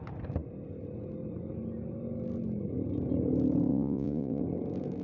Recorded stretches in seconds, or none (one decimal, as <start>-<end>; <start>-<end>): 0.0-3.7; 4.4-5.0